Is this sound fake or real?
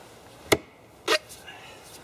real